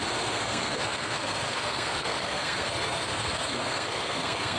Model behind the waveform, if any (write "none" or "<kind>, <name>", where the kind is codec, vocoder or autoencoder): codec, SNAC